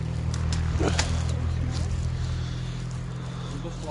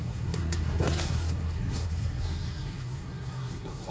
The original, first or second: first